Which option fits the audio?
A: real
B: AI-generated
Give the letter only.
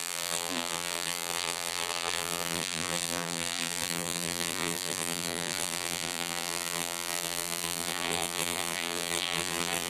B